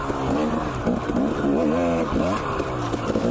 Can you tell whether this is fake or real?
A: real